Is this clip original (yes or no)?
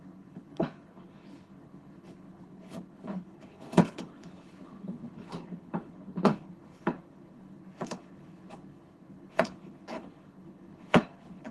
no